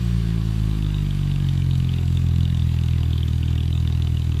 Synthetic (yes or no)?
yes